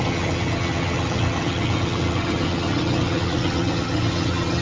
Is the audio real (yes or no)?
no